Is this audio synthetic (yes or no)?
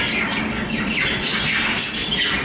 no